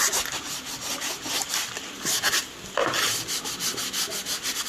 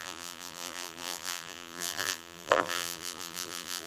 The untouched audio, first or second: first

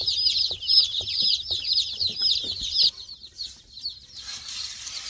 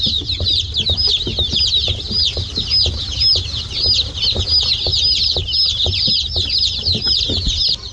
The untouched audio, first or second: second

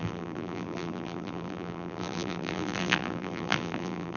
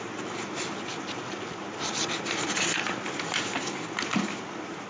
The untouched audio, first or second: second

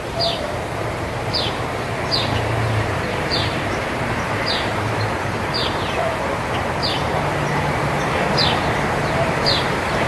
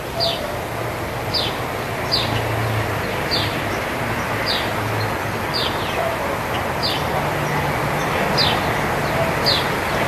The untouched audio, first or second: second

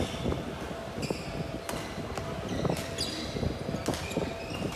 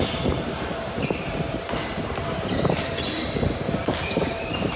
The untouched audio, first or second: first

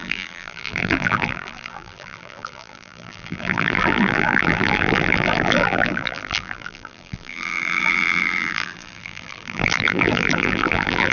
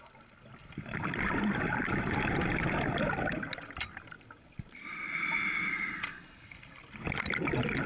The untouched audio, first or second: second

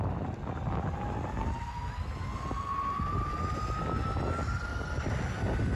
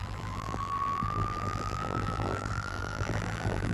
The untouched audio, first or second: first